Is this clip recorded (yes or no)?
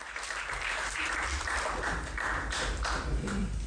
no